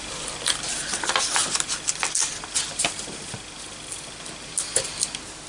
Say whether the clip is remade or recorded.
recorded